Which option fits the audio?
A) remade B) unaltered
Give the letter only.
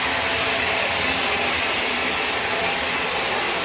B